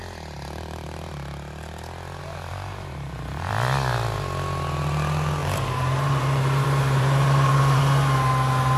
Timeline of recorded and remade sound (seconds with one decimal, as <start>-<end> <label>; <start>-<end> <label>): 0.0-2.5 recorded; 2.5-3.5 remade; 3.5-5.4 recorded; 5.4-7.8 remade; 7.8-8.8 recorded